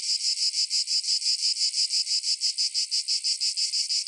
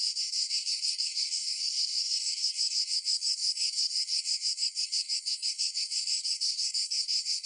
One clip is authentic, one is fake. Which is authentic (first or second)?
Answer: first